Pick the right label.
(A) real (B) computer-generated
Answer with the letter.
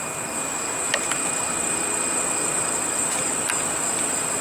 A